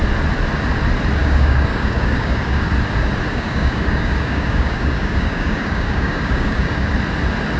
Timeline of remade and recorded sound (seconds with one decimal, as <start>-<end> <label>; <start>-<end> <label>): 0.0-1.2 recorded; 1.2-2.7 remade; 2.7-3.3 recorded; 3.3-6.9 remade; 6.9-7.6 recorded